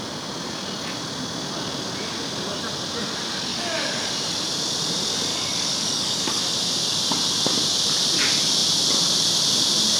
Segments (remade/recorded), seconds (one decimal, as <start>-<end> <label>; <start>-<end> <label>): 0.0-3.5 recorded; 3.5-4.1 remade; 4.1-5.3 recorded; 5.3-6.4 remade; 6.4-10.0 recorded